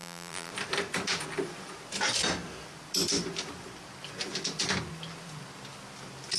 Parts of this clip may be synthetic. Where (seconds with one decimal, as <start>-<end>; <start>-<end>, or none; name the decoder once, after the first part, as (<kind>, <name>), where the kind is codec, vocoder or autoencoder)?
0.0-0.5 (vocoder, BigVGAN v2)